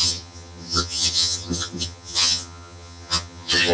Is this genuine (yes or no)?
no